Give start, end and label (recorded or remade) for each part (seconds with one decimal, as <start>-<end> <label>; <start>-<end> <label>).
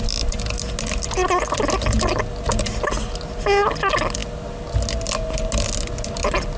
0.0-6.6 recorded